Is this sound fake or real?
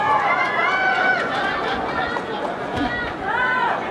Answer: fake